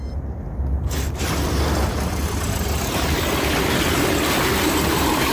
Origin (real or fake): real